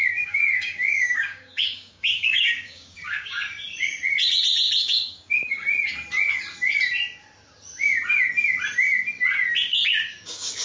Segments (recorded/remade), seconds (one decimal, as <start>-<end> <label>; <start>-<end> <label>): 0.0-3.4 remade; 3.4-4.8 recorded; 4.8-5.6 remade; 5.6-10.1 recorded; 10.1-10.6 remade